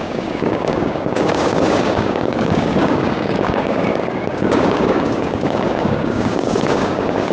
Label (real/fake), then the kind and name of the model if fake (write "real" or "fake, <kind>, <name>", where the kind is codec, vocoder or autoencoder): fake, codec, DAC